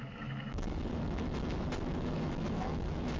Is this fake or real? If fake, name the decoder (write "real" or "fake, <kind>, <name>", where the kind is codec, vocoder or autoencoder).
fake, autoencoder, DAC-VAE